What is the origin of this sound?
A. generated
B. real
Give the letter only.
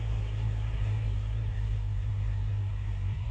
A